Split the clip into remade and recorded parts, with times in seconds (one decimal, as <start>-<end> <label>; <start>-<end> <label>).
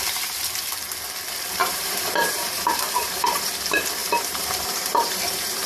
0.0-1.6 recorded; 1.6-3.5 remade; 3.5-4.0 recorded; 4.0-5.7 remade